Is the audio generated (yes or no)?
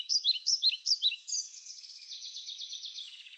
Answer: yes